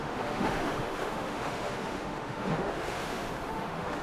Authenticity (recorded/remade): remade